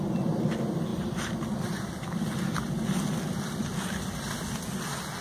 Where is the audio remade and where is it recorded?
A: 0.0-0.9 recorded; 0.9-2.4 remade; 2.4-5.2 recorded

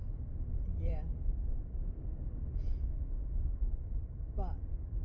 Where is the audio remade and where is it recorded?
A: 0.0-1.6 remade; 1.6-2.6 recorded; 2.6-5.0 remade